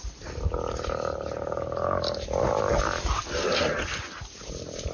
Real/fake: real